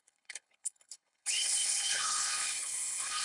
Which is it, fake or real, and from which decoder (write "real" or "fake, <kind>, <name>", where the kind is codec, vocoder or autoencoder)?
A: fake, codec, HILCodec